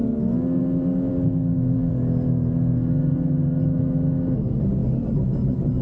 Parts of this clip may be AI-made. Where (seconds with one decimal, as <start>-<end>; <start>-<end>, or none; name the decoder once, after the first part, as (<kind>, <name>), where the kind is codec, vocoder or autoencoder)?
1.1-1.9 (codec, DAC)